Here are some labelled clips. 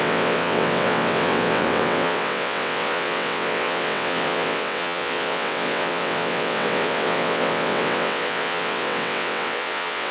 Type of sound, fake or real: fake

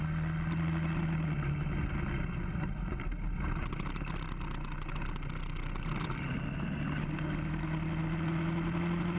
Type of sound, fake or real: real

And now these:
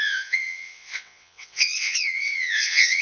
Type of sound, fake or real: fake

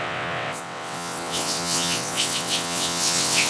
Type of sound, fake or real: fake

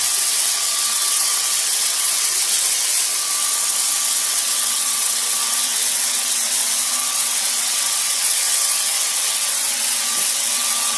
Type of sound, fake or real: fake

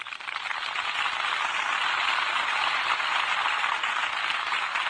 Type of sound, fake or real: real